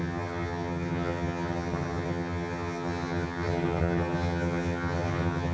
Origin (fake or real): fake